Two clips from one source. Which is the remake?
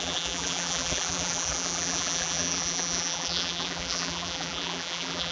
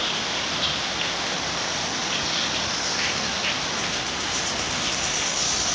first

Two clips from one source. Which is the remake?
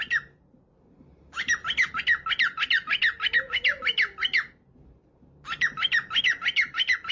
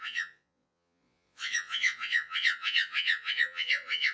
second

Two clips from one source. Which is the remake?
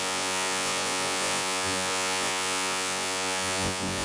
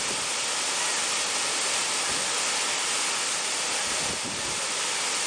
first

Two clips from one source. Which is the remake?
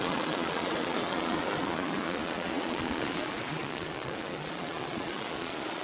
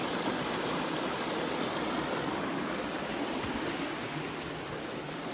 first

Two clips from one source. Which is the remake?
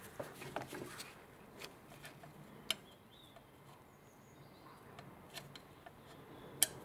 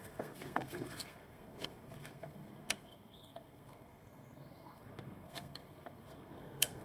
second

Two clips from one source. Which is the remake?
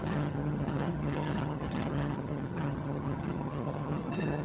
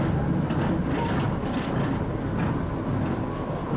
first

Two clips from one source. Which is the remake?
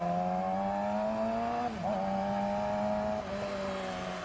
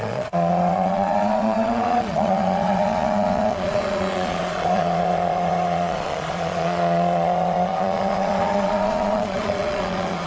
second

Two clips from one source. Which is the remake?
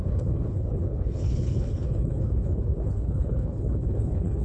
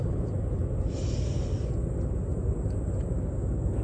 first